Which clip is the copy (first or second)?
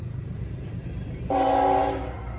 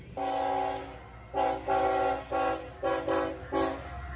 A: first